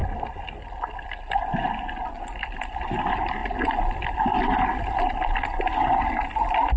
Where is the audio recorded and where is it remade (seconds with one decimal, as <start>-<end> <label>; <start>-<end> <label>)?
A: 0.0-6.8 recorded